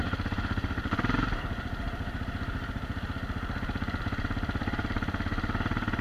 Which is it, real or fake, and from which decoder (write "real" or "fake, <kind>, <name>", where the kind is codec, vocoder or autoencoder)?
fake, vocoder, BigVGAN v2